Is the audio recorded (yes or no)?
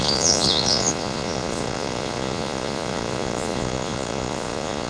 no